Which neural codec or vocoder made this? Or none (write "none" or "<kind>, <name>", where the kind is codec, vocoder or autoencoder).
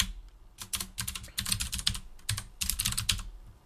none